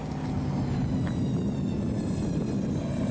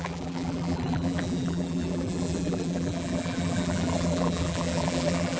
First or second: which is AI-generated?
second